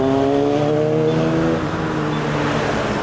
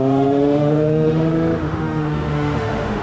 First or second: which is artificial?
second